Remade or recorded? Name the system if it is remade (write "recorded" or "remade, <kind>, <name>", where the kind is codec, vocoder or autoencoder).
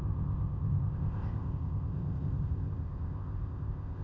remade, codec, ZipCodec